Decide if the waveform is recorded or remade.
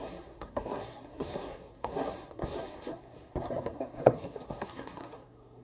remade